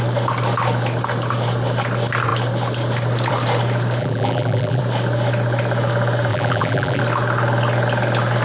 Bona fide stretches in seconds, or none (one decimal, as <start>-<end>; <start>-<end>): 0.0-4.0; 4.8-6.3; 7.0-8.4